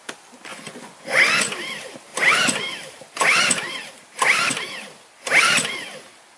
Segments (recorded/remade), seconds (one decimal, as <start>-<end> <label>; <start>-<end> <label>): 0.0-0.5 recorded; 0.5-1.2 remade; 1.2-6.4 recorded